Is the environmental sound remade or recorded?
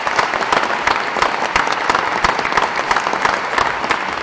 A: recorded